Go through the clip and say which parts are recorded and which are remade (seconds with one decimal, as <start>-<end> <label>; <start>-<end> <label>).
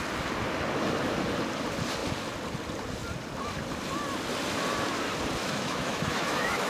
0.0-5.4 recorded; 5.4-6.7 remade